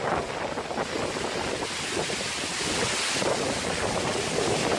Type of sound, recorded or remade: recorded